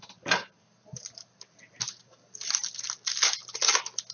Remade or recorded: recorded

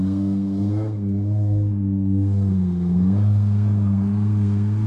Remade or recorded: remade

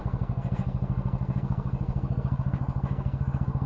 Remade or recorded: remade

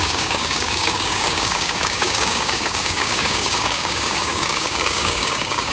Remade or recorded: remade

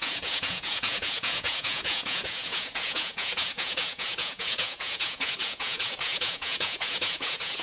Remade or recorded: remade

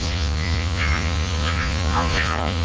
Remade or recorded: remade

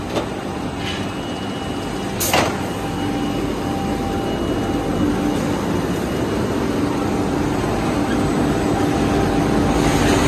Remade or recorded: recorded